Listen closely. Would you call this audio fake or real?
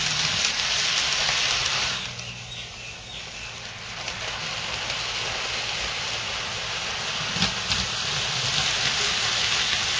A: real